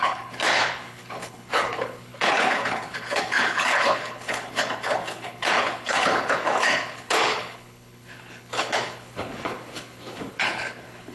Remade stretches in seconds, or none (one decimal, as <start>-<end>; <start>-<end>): 0.0-11.1

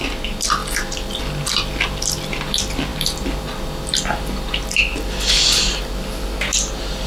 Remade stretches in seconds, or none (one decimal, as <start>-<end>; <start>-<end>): none